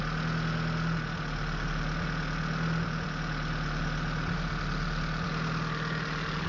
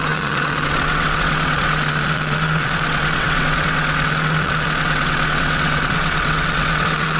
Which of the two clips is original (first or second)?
first